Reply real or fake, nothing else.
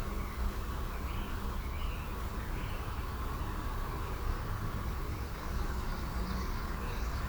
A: fake